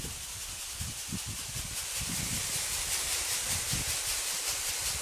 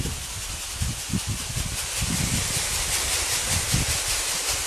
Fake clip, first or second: first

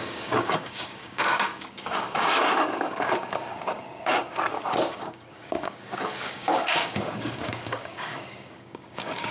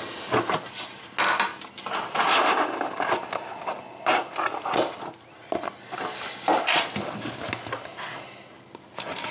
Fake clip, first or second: first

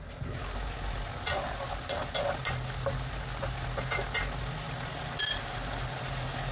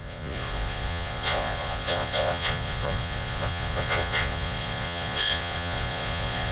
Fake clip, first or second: second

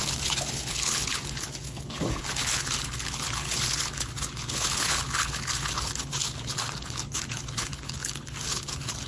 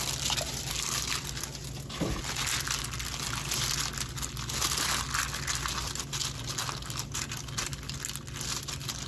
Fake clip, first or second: first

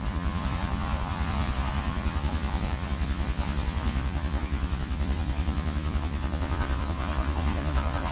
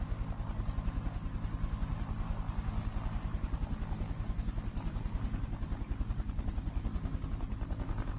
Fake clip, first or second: first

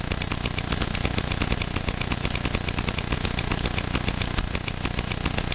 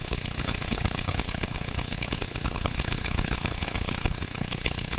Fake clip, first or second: second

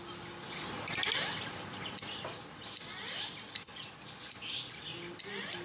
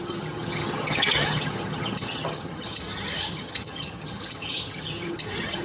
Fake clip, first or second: second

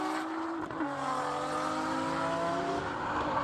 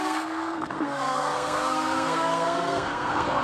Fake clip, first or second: second